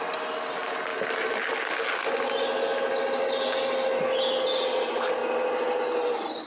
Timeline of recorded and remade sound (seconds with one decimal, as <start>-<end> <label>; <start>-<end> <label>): 0.0-6.5 recorded